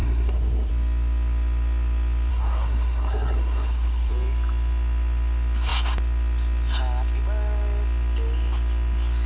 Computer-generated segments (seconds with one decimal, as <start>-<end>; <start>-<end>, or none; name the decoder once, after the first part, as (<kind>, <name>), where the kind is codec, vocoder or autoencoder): 0.0-0.7 (codec, SNAC); 2.3-4.1